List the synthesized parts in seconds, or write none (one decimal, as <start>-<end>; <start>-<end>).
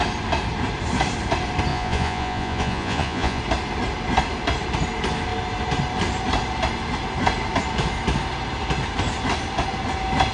1.7-3.4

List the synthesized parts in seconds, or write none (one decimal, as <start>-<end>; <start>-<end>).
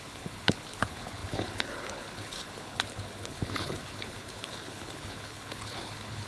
0.0-6.3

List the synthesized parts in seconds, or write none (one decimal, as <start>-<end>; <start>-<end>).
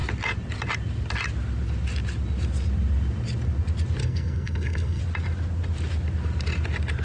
4.0-5.0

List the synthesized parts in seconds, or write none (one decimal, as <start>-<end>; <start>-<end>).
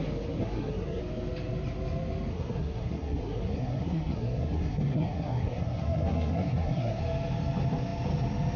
0.4-1.0; 2.3-7.0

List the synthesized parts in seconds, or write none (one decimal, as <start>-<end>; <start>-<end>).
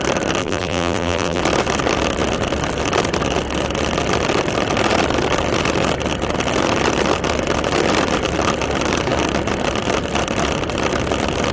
0.4-1.4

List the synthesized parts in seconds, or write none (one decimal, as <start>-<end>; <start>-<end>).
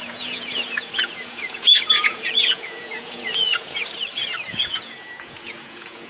0.0-3.8; 4.5-6.1